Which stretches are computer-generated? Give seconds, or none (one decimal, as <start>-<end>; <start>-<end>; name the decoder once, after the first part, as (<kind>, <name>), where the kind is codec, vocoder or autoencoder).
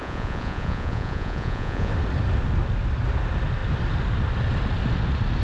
0.0-1.9 (vocoder, Vocos)